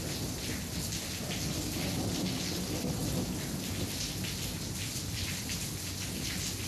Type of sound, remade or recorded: recorded